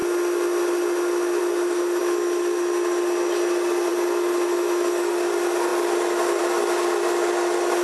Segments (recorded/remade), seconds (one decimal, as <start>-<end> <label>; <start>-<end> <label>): 0.0-7.8 recorded

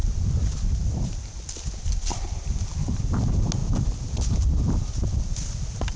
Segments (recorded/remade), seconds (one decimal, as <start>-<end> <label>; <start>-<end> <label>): 0.0-3.1 remade; 3.1-6.0 recorded

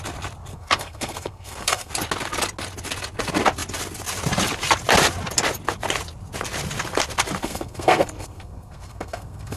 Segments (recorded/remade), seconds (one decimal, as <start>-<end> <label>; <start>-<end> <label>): 0.0-0.5 recorded; 0.5-1.9 remade; 1.9-7.4 recorded; 7.4-9.6 remade

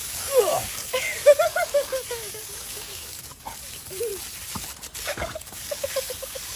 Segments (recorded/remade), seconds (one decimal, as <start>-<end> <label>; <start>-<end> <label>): 0.0-4.1 remade; 4.1-5.0 recorded; 5.0-6.6 remade

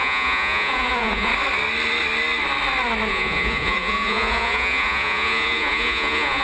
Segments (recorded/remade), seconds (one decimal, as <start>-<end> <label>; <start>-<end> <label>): 0.0-1.3 remade; 1.3-3.1 recorded; 3.1-6.4 remade

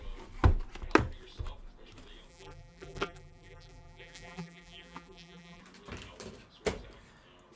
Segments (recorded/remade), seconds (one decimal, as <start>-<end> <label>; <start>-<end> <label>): 0.0-2.3 recorded; 2.3-5.6 remade; 5.6-7.6 recorded

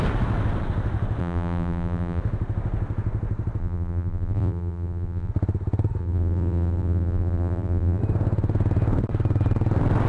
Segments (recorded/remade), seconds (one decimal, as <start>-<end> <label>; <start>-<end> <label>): 0.0-1.2 recorded; 1.2-2.2 remade; 2.2-3.6 recorded; 3.6-5.3 remade; 5.3-6.0 recorded; 6.0-8.0 remade; 8.0-10.1 recorded

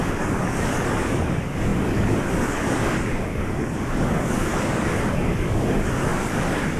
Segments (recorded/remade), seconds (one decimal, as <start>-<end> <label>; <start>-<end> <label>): 0.0-6.8 remade